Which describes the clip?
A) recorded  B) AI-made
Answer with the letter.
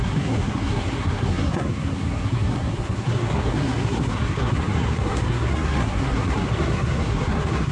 B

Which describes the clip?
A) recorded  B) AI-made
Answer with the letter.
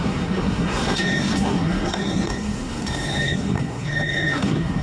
B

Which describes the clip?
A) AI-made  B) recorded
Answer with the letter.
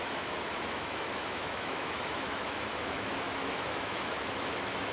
A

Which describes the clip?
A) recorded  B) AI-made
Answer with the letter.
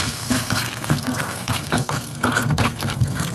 B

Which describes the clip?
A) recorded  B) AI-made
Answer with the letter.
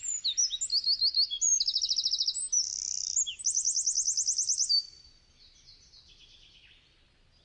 A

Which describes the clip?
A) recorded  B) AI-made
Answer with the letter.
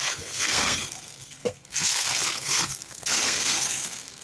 B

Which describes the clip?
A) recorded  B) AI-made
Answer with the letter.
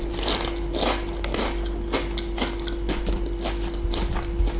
A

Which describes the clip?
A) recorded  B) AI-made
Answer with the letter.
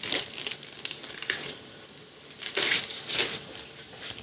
A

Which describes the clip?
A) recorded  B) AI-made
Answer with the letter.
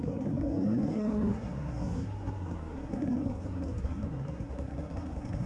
B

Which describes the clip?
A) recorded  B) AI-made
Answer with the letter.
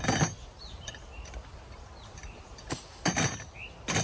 A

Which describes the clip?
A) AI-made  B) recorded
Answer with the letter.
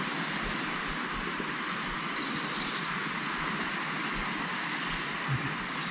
B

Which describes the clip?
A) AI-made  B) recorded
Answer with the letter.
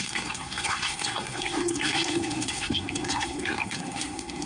A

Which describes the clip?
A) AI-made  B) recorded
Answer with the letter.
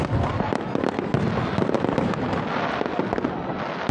B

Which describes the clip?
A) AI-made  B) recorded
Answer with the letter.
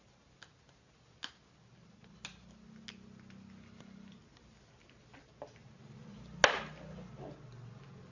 B